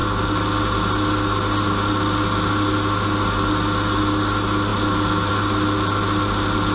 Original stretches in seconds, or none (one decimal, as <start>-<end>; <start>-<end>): 0.0-6.7